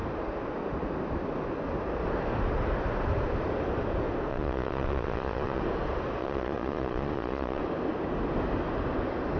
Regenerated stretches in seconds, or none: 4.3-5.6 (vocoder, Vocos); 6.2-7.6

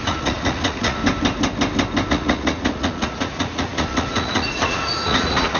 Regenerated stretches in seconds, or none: 0.0-1.0 (vocoder, Vocos); 2.1-5.6

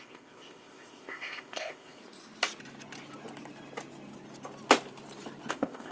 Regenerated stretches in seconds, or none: 0.0-2.0 (codec, ZipCodec); 5.5-5.9

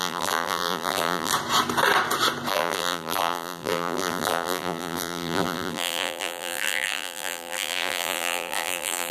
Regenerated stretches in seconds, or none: 0.0-1.3 (vocoder, BigVGAN v2); 2.5-9.1

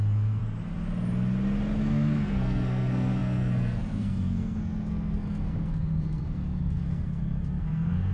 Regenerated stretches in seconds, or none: 0.0-0.4 (codec, SNAC); 1.8-8.1